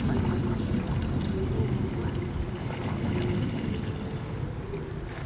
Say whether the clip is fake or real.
real